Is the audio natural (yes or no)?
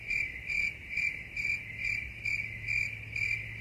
yes